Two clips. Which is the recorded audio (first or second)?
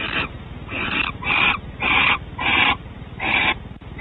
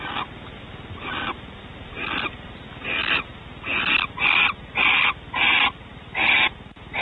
second